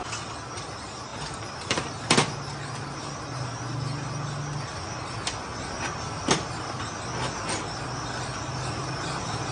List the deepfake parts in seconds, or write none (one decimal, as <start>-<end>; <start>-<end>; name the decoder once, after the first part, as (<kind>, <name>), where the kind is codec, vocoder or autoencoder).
1.1-1.9 (vocoder, BigVGAN v2)